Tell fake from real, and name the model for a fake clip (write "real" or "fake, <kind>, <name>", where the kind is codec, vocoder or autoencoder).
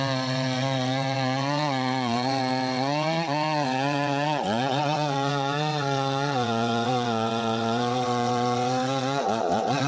fake, vocoder, WaveNeXt